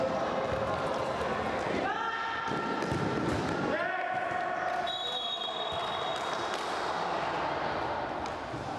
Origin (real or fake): real